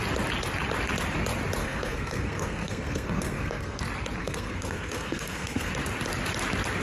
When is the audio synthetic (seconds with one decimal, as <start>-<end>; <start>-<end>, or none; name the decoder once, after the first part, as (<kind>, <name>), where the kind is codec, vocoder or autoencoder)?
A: 1.6-3.8 (codec, SNAC); 4.2-5.7